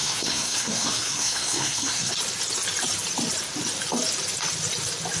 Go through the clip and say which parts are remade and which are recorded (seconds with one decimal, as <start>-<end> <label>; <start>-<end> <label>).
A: 0.0-2.1 remade; 2.1-5.2 recorded